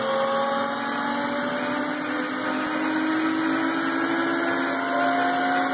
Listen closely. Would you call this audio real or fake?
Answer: real